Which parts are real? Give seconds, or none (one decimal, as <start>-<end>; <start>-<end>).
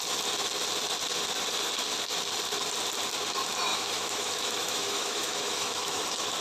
0.0-3.7; 6.0-6.4